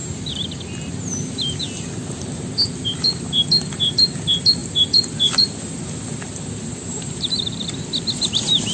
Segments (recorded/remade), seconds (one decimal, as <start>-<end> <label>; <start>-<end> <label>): 0.0-1.6 remade; 1.6-4.6 recorded; 4.6-5.1 remade; 5.1-8.7 recorded